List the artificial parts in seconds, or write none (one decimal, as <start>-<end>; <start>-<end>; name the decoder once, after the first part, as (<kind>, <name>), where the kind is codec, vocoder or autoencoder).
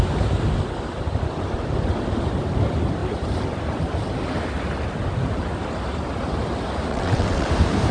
6.9-7.5 (vocoder, WaveNeXt)